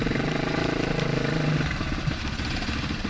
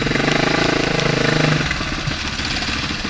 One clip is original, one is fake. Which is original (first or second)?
second